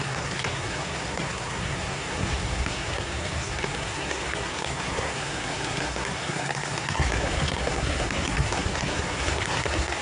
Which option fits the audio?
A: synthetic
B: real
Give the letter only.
A